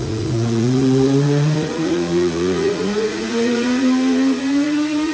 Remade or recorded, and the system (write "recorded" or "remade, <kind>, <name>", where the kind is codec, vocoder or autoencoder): remade, vocoder, Vocos